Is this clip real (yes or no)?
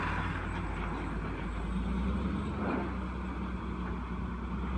yes